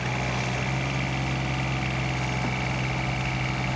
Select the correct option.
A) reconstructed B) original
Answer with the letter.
B